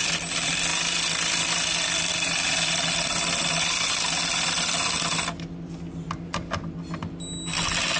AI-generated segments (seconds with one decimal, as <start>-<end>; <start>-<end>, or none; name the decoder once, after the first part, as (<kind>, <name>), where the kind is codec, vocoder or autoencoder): none